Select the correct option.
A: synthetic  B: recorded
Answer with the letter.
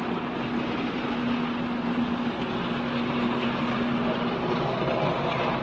B